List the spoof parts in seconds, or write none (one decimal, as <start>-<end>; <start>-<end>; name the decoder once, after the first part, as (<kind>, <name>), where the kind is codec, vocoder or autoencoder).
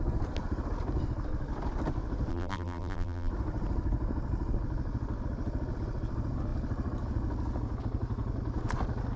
2.3-3.3 (vocoder, BigVGAN v2)